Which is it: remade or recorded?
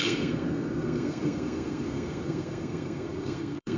remade